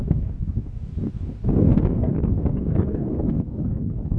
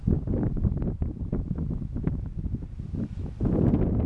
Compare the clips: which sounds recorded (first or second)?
second